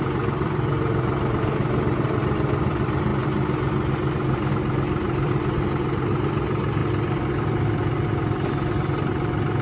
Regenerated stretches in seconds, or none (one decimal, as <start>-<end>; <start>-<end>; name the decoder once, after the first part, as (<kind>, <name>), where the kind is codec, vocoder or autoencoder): 0.0-3.1 (vocoder, BigVGAN v2); 4.5-9.6